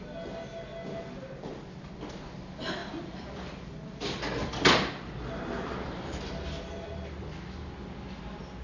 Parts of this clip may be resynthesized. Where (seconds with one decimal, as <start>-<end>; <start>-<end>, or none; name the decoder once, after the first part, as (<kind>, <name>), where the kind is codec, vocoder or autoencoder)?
none